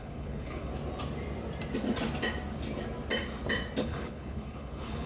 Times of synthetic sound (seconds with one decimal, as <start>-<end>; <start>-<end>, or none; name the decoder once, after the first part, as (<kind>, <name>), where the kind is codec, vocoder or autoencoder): 0.0-0.7 (codec, HILCodec); 3.8-5.1

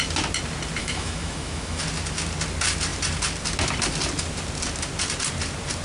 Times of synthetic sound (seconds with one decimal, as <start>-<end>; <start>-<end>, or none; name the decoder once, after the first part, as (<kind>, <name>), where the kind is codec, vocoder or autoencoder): 0.8-1.8 (autoencoder, DAC-VAE)